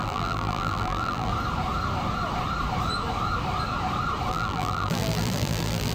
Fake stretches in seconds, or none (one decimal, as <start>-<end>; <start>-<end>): 0.0-1.3; 4.3-5.9